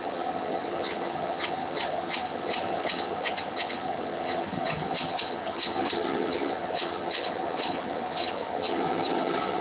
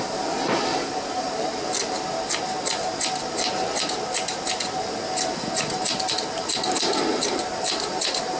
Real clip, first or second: second